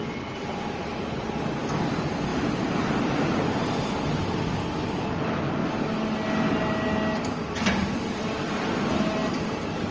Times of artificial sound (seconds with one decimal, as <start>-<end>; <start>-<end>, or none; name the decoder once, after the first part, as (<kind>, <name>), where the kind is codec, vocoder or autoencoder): none

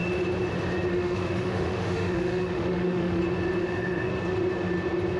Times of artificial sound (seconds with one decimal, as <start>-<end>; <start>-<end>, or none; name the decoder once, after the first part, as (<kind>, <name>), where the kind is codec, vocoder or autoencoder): 0.9-3.2 (autoencoder, DAC-VAE); 3.6-4.1

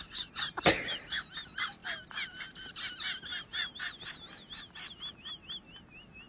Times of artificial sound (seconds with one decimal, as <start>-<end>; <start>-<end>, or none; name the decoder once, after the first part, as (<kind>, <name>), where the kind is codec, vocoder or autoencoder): none

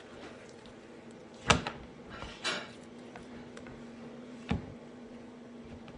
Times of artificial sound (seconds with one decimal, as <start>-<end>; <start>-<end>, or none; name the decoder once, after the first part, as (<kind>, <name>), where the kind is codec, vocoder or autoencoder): 0.0-6.0 (vocoder, Vocos)

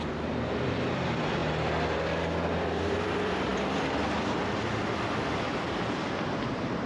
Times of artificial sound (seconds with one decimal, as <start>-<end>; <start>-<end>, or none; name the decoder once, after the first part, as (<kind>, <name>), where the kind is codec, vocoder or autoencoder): 0.0-1.4 (vocoder, BigVGAN v2); 2.7-6.9